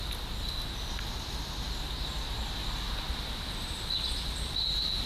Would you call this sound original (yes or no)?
yes